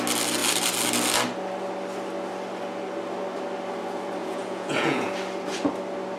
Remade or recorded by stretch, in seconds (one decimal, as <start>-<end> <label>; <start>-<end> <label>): 0.0-4.2 recorded; 4.2-5.1 remade; 5.1-6.2 recorded